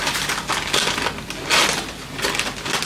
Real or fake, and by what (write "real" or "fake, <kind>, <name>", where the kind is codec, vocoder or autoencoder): real